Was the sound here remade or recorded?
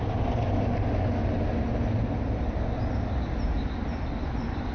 recorded